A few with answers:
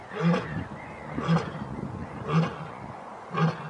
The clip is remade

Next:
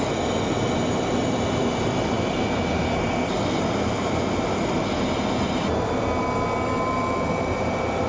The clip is recorded